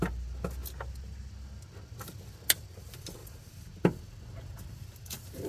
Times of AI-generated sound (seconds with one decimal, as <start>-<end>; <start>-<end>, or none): 3.2-3.8